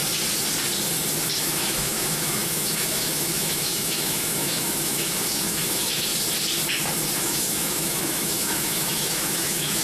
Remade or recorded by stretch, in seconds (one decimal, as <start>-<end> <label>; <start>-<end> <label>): 0.0-1.4 recorded; 1.4-6.1 remade; 6.1-7.2 recorded; 7.2-9.8 remade